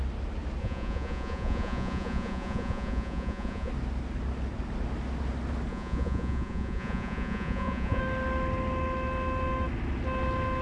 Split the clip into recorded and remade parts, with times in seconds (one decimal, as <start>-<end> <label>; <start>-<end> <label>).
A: 0.0-0.6 recorded; 0.6-3.7 remade; 3.7-5.7 recorded; 5.7-8.0 remade; 8.0-10.6 recorded

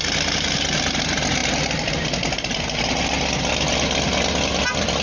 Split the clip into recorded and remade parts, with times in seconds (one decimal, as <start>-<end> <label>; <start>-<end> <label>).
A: 0.0-5.0 recorded

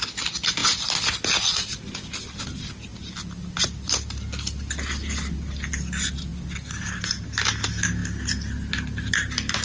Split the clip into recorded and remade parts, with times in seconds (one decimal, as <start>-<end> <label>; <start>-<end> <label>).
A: 0.0-9.6 recorded

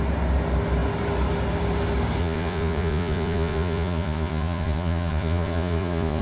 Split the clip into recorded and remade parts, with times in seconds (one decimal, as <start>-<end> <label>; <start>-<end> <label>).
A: 0.0-2.2 recorded; 2.2-6.2 remade

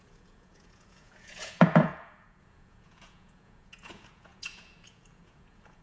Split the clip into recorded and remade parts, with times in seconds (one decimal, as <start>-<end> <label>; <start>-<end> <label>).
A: 0.0-5.8 remade